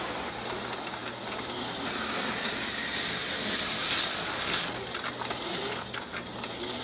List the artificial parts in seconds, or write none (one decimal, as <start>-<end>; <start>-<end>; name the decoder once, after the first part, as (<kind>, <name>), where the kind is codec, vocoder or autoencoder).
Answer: none